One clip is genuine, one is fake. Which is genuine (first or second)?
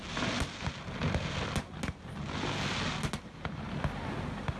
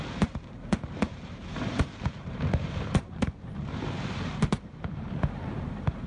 first